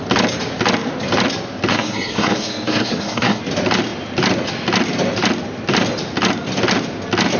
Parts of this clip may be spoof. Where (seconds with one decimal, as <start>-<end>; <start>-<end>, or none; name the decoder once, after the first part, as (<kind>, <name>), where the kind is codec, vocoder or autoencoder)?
1.7-3.4 (codec, SNAC)